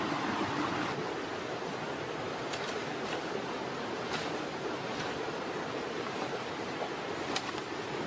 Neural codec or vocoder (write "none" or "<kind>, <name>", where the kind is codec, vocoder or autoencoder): none